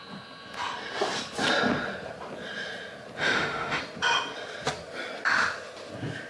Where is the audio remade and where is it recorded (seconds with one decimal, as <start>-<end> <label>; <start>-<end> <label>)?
0.0-3.2 recorded; 3.2-3.8 remade; 3.8-6.3 recorded